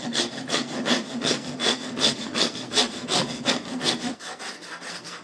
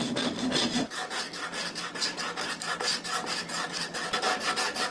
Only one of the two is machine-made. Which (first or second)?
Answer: first